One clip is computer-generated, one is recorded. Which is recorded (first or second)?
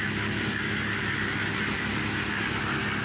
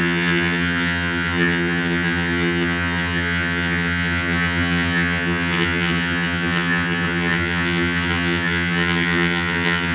first